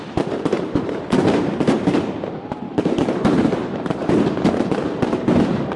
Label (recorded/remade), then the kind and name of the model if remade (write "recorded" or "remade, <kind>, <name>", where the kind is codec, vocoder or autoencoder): remade, vocoder, BigVGAN v2